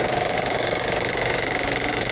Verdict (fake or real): fake